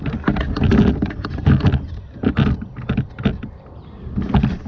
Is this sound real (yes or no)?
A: yes